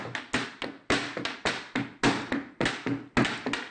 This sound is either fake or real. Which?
real